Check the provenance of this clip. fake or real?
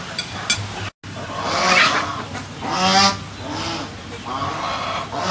real